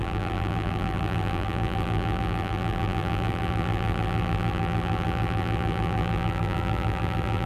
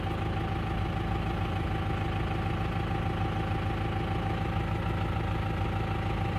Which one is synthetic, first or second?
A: first